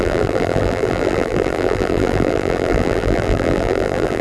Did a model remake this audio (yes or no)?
yes